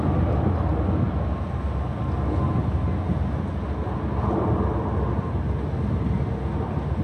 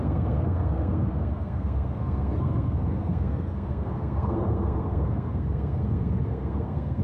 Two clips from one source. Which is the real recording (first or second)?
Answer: first